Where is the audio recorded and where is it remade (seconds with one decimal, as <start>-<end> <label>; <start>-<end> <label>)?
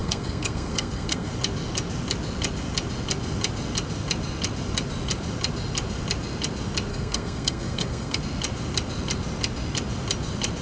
0.0-1.3 remade; 1.3-6.9 recorded; 6.9-8.2 remade; 8.2-10.6 recorded